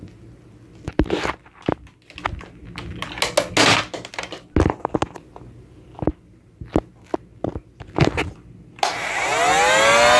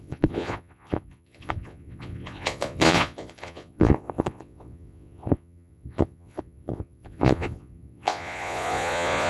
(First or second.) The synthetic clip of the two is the second